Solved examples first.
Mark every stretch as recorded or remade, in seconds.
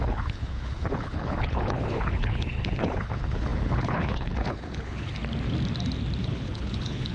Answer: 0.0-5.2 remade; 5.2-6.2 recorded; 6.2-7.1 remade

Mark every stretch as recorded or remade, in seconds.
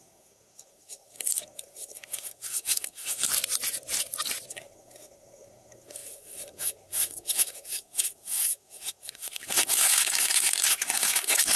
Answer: 0.0-3.3 remade; 3.3-4.5 recorded; 4.5-11.6 remade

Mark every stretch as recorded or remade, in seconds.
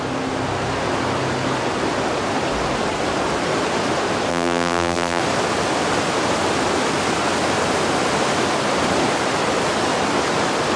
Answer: 0.0-4.3 recorded; 4.3-5.2 remade; 5.2-10.8 recorded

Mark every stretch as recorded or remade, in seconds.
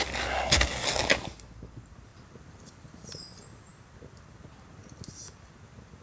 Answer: 0.0-2.1 recorded; 2.1-2.9 remade; 2.9-3.7 recorded; 3.7-5.5 remade; 5.5-6.0 recorded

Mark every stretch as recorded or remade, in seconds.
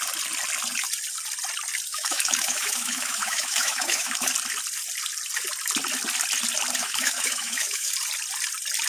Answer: 0.0-1.9 recorded; 1.9-4.3 remade; 4.3-6.8 recorded; 6.8-7.9 remade; 7.9-8.9 recorded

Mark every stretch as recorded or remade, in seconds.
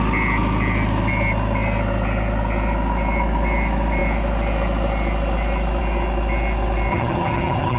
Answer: 0.0-6.9 recorded; 6.9-7.8 remade